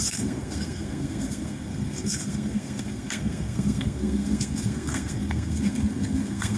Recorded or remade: remade